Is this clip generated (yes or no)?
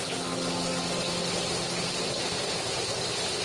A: no